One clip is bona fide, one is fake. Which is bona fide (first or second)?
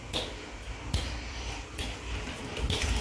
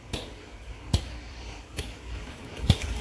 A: first